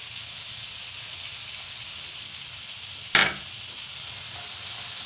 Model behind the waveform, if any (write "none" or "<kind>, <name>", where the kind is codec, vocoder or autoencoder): none